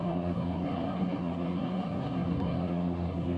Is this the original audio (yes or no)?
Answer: no